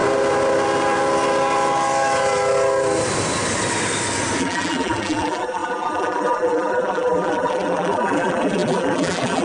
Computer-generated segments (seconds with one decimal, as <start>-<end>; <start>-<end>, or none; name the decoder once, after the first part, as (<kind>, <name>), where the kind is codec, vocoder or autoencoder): 4.4-9.4 (vocoder, BigVGAN v2)